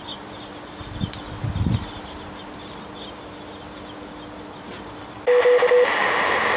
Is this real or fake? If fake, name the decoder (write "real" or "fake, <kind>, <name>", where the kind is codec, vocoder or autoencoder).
real